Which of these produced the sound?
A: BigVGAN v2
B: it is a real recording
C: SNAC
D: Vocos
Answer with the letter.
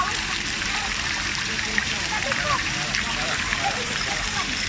A